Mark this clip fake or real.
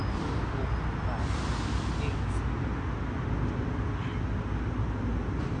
real